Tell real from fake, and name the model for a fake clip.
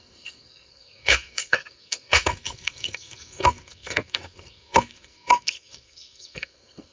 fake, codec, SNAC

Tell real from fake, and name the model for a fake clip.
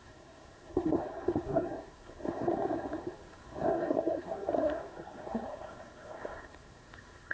fake, codec, SNAC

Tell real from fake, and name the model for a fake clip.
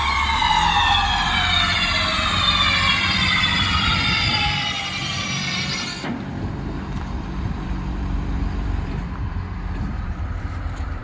fake, vocoder, BigVGAN v2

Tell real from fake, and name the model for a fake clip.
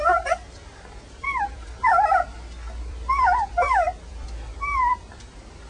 fake, vocoder, BigVGAN v2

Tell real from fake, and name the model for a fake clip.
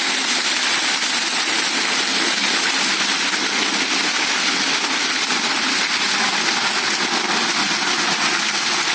real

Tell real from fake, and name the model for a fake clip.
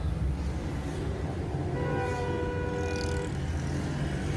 real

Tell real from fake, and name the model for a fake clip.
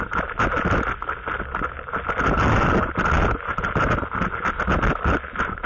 real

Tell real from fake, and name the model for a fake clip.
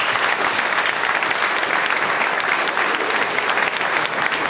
real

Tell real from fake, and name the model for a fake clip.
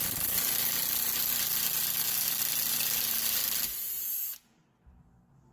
real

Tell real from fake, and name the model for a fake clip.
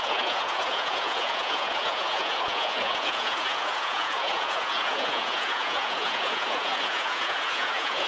fake, vocoder, Vocos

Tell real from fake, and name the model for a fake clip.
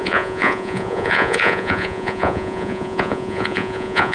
fake, vocoder, Vocos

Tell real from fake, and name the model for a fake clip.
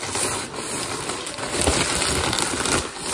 real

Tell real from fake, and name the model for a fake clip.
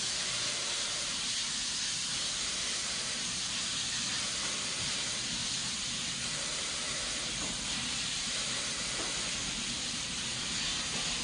fake, vocoder, BigVGAN v2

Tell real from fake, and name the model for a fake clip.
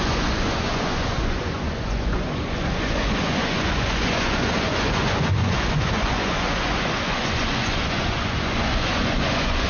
fake, vocoder, Vocos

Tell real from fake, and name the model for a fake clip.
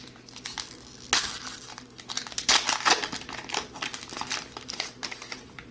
real